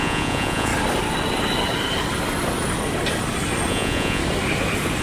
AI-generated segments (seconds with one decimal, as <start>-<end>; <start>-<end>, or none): 0.0-0.7; 3.7-4.2